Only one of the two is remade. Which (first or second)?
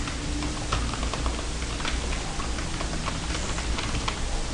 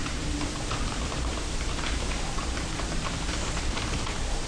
second